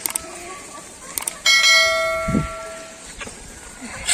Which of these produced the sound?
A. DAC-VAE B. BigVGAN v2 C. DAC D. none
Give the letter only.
D